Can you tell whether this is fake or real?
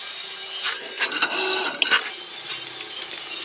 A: real